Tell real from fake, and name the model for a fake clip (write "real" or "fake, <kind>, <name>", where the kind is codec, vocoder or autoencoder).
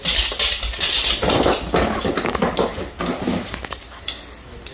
real